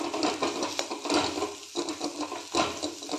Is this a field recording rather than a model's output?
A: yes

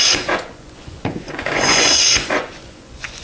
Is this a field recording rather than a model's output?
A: no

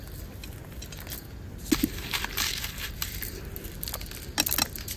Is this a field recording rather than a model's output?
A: yes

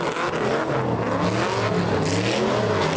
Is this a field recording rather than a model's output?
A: yes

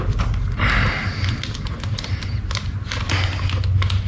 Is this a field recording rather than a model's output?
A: yes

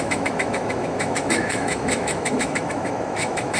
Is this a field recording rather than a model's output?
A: no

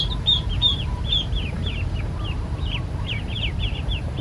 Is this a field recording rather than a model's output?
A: no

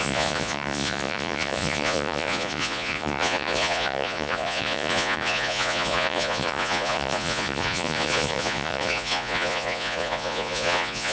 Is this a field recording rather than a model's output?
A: no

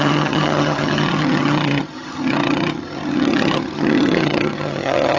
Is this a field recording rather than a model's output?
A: no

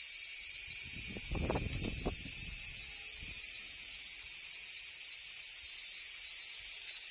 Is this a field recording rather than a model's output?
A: yes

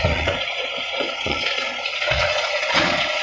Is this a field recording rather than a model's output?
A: no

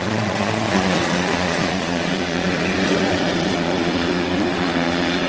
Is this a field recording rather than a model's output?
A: no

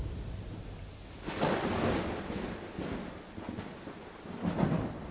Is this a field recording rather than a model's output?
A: yes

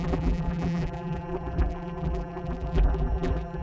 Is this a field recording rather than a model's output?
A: no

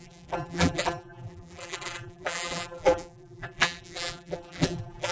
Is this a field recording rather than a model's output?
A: no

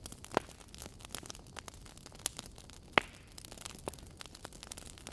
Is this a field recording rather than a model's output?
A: yes